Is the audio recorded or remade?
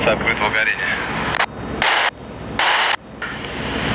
recorded